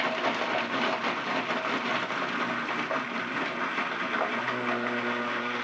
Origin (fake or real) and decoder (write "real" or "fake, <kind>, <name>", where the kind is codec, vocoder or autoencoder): fake, vocoder, BigVGAN v2